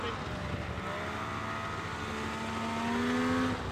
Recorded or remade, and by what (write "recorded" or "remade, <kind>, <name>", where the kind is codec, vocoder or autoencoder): recorded